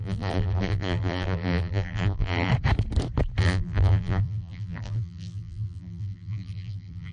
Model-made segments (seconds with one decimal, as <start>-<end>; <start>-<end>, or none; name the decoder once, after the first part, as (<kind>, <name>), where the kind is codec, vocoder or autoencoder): 0.0-2.5 (vocoder, BigVGAN v2); 3.4-7.1